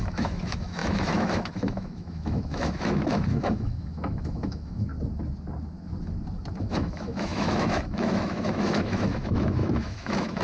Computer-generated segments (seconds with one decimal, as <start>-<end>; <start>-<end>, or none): 0.0-4.9; 6.6-10.4